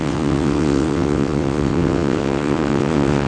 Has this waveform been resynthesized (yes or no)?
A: yes